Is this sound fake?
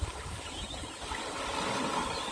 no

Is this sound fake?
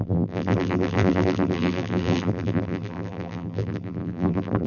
yes